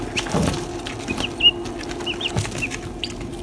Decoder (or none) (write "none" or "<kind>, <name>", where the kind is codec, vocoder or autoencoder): none